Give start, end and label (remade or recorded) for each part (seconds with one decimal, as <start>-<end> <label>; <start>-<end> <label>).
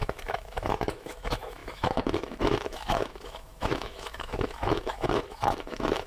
0.0-6.1 remade